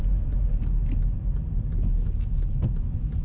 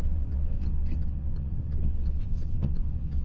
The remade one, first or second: second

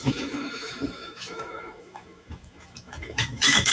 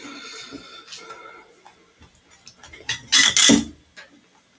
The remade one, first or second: first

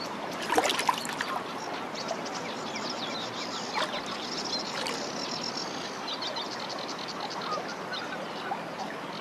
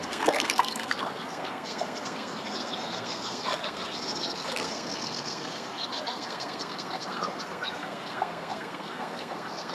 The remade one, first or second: second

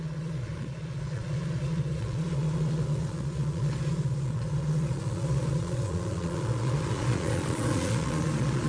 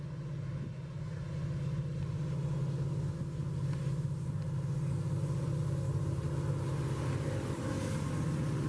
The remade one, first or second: first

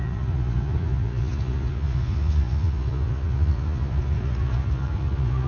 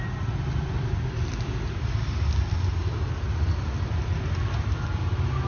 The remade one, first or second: first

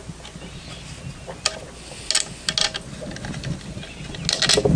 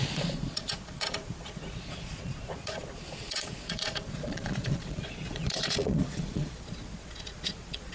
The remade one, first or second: second